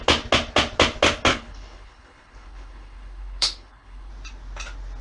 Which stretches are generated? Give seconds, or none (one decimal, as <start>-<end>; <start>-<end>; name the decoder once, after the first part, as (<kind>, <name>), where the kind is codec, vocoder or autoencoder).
1.3-4.1 (codec, HILCodec)